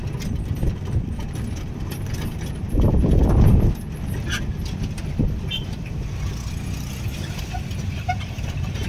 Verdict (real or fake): real